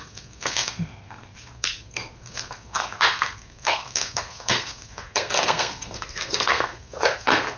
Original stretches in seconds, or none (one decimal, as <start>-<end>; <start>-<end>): none